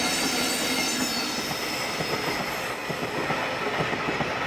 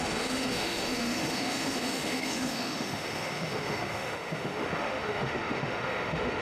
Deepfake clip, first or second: second